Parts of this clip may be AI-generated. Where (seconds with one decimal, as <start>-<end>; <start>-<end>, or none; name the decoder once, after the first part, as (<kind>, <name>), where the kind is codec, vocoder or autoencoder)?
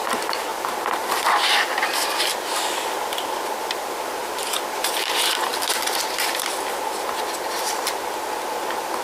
0.5-3.3 (vocoder, BigVGAN v2)